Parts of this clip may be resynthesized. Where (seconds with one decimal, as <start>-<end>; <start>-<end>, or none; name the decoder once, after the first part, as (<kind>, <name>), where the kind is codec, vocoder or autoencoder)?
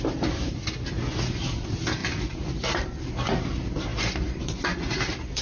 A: 2.0-3.0 (vocoder, BigVGAN v2); 3.9-4.7